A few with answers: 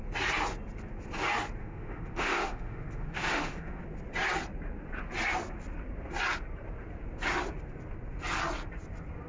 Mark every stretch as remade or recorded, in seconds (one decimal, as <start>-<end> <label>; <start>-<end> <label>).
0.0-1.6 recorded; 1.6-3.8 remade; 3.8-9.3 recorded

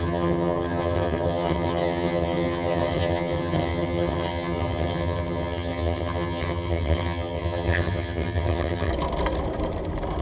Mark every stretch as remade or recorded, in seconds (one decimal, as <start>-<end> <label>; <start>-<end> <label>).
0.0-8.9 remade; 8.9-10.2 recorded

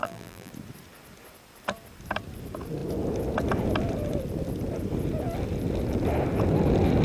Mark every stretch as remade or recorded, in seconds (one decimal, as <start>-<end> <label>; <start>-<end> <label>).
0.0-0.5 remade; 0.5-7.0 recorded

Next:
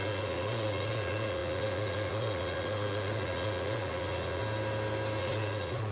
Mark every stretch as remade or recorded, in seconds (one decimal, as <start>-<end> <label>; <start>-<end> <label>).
0.0-4.4 remade; 4.4-5.2 recorded; 5.2-5.9 remade

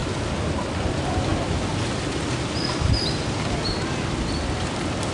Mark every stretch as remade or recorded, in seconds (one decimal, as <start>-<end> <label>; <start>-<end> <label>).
0.0-5.1 recorded

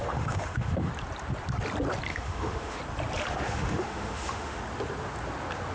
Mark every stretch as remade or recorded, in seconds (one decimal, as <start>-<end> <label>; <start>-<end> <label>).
0.0-0.9 remade; 0.9-2.1 recorded; 2.1-2.8 remade; 2.8-3.3 recorded; 3.3-4.6 remade; 4.6-5.7 recorded

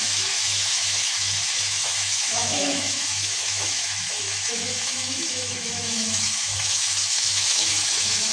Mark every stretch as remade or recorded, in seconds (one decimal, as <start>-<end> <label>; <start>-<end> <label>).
0.0-8.3 remade